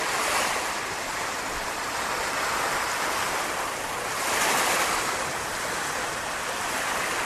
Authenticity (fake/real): real